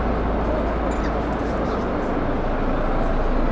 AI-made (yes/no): no